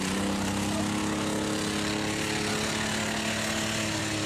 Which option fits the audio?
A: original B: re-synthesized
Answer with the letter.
A